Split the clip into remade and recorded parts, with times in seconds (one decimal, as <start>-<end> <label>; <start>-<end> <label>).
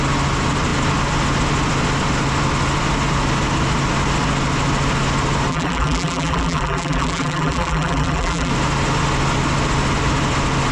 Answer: 0.0-5.5 recorded; 5.5-8.5 remade; 8.5-10.7 recorded